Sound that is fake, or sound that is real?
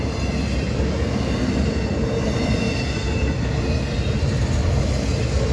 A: real